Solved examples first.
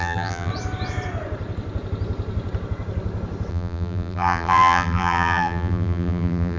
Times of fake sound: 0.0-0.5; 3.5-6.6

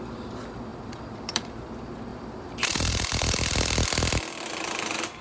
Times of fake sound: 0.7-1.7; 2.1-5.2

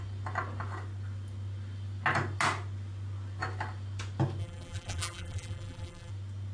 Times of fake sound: 4.4-6.1

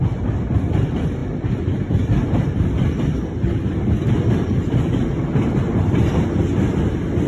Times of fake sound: 0.0-7.3